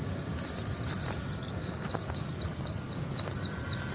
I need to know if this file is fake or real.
real